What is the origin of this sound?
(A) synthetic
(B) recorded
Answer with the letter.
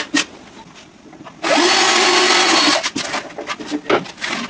B